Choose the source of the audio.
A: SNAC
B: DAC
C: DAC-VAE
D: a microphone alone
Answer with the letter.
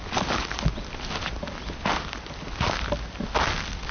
D